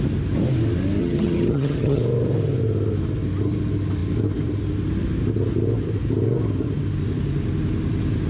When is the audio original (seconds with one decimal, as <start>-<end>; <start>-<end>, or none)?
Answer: 0.0-1.0; 2.0-8.3